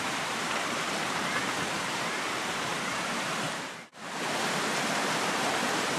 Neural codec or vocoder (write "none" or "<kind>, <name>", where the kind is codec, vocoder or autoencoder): vocoder, BigVGAN v2